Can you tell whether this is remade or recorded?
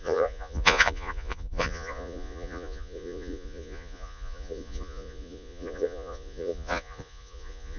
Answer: remade